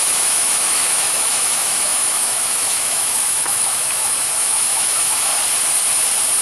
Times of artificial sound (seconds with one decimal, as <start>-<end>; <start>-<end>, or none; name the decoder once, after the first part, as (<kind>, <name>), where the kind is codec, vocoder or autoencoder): 0.0-5.3 (autoencoder, DAC-VAE)